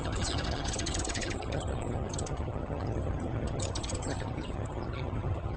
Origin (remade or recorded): remade